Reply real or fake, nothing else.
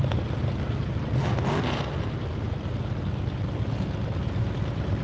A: real